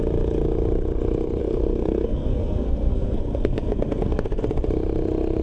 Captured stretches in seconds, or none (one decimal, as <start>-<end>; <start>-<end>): 0.0-1.4; 4.4-5.4